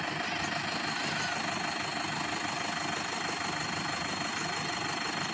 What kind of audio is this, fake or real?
real